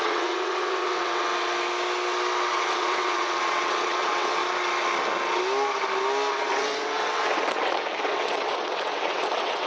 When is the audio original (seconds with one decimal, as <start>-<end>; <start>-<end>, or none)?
1.3-2.5; 4.4-6.3